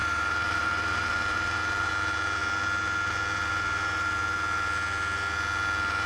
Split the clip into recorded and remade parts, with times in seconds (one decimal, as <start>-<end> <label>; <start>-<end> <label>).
0.0-1.9 remade; 1.9-6.1 recorded